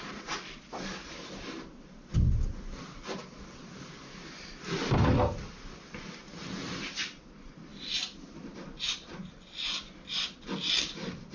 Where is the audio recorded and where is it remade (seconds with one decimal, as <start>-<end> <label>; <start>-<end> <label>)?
0.0-11.3 recorded